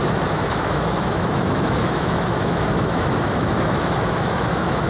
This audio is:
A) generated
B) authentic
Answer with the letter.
A